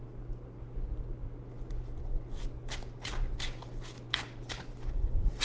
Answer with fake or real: real